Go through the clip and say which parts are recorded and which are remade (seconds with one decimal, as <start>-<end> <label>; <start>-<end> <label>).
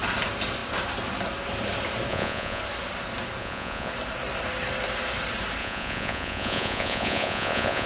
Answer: 0.0-2.1 recorded; 2.1-2.6 remade; 2.6-3.4 recorded; 3.4-3.9 remade; 3.9-5.6 recorded; 5.6-7.9 remade